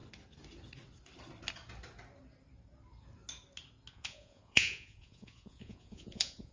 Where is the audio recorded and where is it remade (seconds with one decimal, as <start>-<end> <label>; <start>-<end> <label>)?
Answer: 0.0-3.9 recorded; 3.9-6.5 remade